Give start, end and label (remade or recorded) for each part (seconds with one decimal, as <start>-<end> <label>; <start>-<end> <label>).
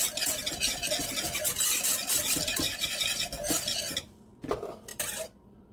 0.0-4.9 recorded; 4.9-5.7 remade